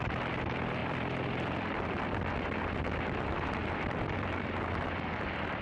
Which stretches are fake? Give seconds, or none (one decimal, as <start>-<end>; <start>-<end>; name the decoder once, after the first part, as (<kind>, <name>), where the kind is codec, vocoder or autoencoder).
0.8-2.3 (vocoder, BigVGAN v2); 3.6-4.6